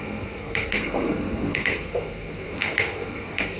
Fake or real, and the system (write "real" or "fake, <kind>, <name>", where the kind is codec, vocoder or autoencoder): fake, codec, SNAC